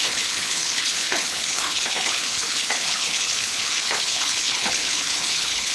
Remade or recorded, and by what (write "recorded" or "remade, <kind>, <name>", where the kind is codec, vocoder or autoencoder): remade, codec, HILCodec